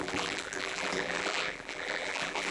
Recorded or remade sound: remade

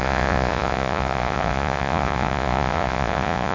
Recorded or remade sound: remade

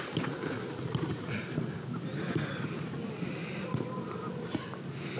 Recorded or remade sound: recorded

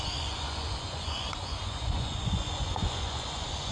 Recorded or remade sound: remade